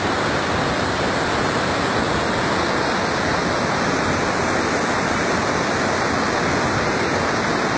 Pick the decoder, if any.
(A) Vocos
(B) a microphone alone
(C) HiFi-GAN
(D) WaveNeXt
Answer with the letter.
B